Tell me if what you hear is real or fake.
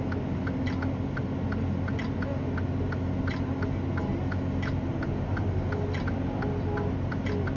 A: real